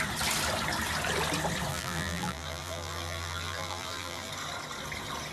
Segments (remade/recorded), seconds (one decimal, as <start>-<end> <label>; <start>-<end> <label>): 0.0-1.7 recorded; 1.7-4.3 remade; 4.3-5.3 recorded